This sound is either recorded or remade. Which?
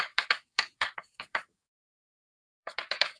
remade